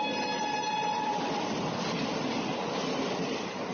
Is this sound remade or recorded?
recorded